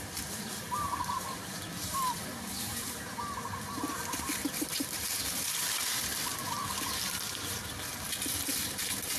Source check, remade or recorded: remade